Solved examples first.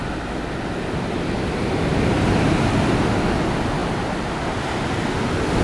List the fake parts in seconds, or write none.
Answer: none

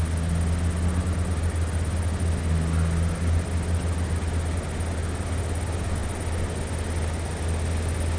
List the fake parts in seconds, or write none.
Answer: none